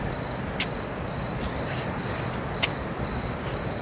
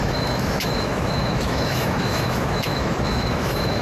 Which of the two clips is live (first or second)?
first